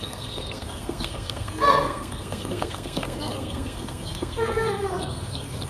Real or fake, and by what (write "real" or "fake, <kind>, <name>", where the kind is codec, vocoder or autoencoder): fake, codec, SNAC